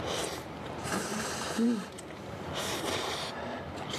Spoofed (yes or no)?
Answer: yes